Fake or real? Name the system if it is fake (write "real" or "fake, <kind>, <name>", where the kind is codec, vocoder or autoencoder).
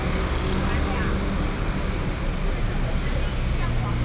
real